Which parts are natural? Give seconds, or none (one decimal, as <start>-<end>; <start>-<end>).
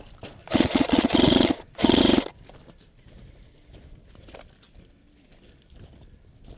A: 0.0-0.4; 2.0-6.6